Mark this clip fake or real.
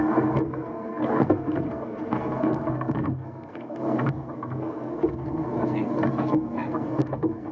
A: fake